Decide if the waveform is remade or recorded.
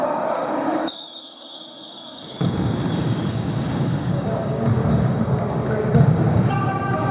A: remade